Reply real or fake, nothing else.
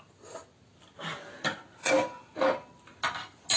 real